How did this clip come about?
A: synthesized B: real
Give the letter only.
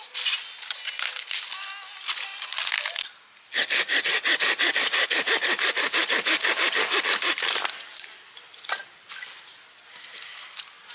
B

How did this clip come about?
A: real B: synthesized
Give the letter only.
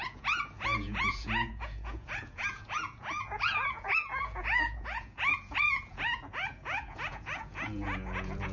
B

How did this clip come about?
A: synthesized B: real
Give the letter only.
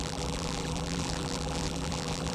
A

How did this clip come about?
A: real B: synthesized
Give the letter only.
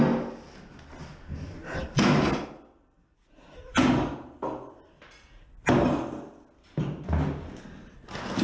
A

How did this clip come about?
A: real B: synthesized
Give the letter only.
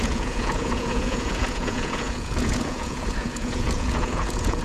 B